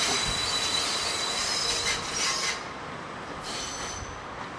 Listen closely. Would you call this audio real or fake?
real